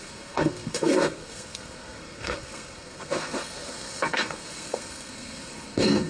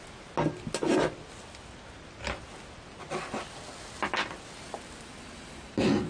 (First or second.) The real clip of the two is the second